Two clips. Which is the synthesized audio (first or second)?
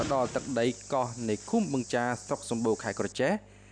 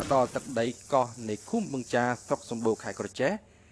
second